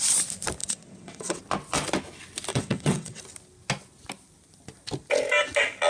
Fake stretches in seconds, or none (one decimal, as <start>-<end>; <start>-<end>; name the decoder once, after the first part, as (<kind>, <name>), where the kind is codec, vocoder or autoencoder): 0.6-1.4 (vocoder, WaveNeXt); 2.5-3.2